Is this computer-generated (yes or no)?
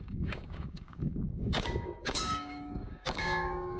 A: yes